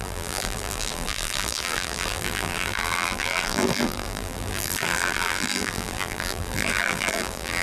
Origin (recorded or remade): remade